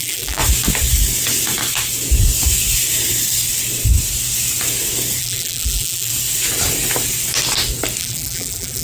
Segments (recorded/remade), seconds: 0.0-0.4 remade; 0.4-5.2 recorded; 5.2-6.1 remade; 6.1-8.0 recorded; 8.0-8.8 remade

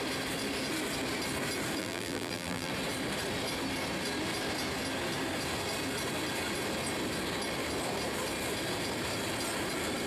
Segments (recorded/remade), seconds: 0.0-1.8 recorded; 1.8-2.7 remade; 2.7-10.1 recorded

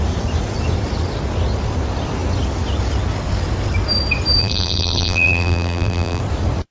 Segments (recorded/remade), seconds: 0.0-4.4 recorded; 4.4-6.2 remade; 6.2-6.7 recorded